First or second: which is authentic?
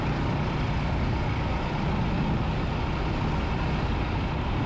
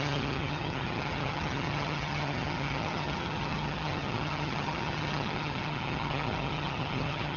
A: first